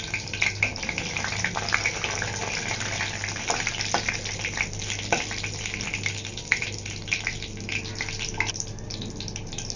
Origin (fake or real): real